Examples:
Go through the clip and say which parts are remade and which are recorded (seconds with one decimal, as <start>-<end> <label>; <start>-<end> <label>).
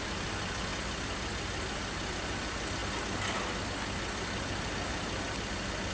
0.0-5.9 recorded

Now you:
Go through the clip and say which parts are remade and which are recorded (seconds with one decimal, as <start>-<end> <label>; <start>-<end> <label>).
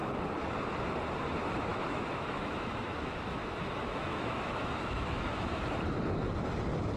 0.0-1.7 recorded; 1.7-5.6 remade; 5.6-7.0 recorded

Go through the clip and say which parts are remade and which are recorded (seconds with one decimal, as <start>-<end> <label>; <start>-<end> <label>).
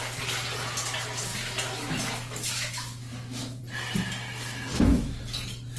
0.0-1.3 recorded; 1.3-3.6 remade; 3.6-4.7 recorded; 4.7-5.2 remade; 5.2-5.8 recorded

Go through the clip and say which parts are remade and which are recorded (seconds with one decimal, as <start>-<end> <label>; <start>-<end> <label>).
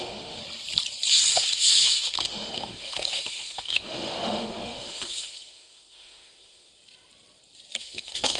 0.0-0.4 remade; 0.4-1.3 recorded; 1.3-6.7 remade; 6.7-7.8 recorded; 7.8-8.4 remade